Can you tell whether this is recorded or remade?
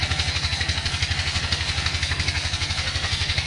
remade